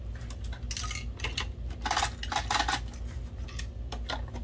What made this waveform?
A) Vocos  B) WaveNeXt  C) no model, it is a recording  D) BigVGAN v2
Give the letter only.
C